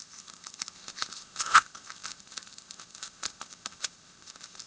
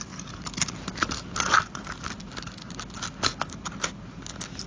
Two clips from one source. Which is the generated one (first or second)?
first